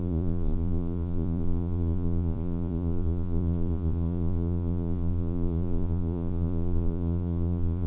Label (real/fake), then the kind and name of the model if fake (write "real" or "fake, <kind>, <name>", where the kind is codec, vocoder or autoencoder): fake, vocoder, Vocos